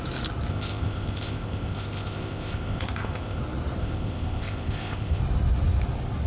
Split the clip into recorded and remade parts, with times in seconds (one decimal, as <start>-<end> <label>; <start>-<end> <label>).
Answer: 0.0-0.5 recorded; 0.5-3.4 remade; 3.4-3.8 recorded; 3.8-5.2 remade; 5.2-6.3 recorded